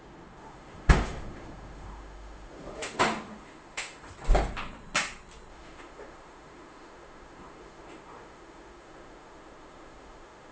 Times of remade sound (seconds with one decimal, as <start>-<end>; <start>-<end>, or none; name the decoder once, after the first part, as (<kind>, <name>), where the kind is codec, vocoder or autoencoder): 0.0-4.1 (autoencoder, DAC-VAE); 5.5-10.5